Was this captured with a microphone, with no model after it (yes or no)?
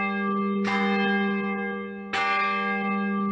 yes